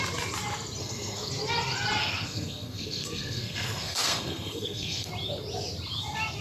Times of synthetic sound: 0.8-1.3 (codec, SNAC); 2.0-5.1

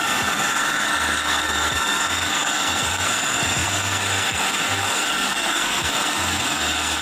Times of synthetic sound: 0.0-7.0 (codec, SNAC)

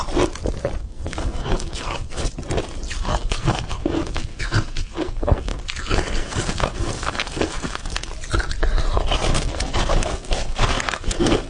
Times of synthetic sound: 0.8-2.3 (codec, SNAC); 3.0-8.1; 9.3-11.5

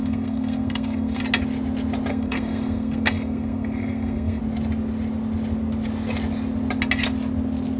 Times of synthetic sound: 0.0-1.2 (codec, SNAC); 2.1-4.4

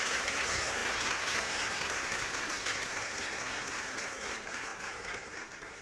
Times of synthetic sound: 0.0-5.8 (codec, SNAC)

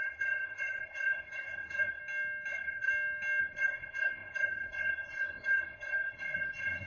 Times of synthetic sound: 0.0-2.0 (codec, SNAC); 2.5-2.9; 3.4-6.9

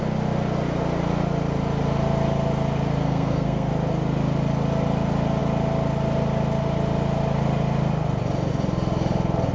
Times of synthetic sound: 3.0-3.7 (codec, SNAC)

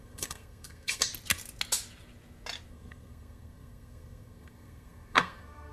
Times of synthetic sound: 0.0-1.1 (codec, SNAC); 2.7-5.7